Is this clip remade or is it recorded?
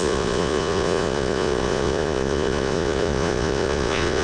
remade